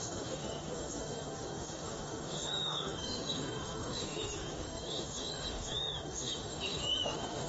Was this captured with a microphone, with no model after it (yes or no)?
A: no